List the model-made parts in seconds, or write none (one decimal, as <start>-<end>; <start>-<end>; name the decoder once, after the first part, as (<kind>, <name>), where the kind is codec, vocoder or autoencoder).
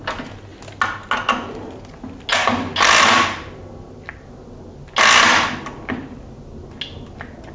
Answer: none